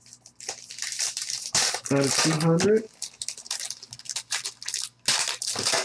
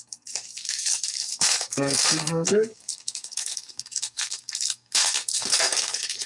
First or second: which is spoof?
second